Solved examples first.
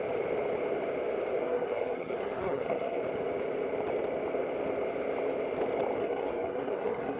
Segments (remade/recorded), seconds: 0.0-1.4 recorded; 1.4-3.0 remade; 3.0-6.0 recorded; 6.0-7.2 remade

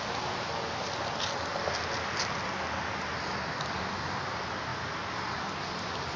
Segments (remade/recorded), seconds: 0.0-6.2 recorded

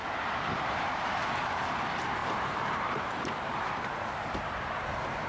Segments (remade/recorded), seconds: 0.0-1.1 remade; 1.1-2.2 recorded; 2.2-4.7 remade; 4.7-5.3 recorded